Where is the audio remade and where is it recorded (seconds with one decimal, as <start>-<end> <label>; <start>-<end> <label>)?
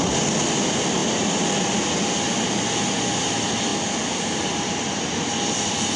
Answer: 0.0-3.7 recorded; 3.7-5.0 remade; 5.0-6.0 recorded